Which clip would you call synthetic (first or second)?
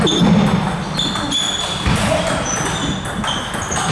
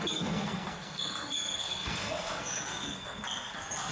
second